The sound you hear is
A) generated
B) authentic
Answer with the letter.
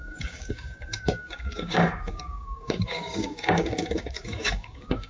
A